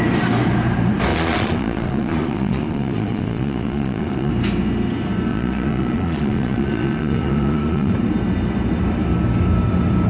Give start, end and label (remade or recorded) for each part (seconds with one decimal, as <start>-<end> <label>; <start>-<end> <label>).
0.0-1.1 recorded; 1.1-4.3 remade; 4.3-5.3 recorded; 5.3-7.9 remade; 7.9-10.1 recorded